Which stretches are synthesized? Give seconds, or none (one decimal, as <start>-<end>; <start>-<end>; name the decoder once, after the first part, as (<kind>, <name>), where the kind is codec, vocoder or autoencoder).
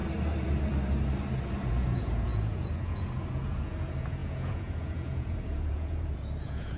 1.7-6.8 (vocoder, Vocos)